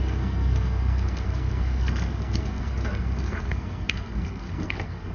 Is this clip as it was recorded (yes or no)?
no